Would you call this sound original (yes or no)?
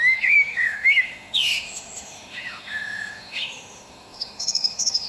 no